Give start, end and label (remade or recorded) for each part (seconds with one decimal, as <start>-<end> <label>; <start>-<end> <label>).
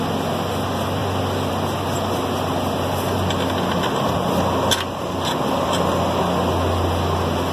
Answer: 0.0-7.5 recorded